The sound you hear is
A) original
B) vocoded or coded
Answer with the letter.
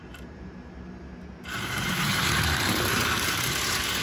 B